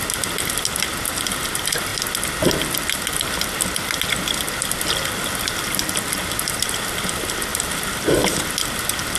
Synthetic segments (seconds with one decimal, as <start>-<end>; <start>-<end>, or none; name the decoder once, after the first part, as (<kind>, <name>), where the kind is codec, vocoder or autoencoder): none